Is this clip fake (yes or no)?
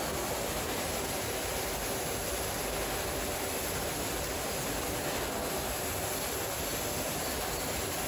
no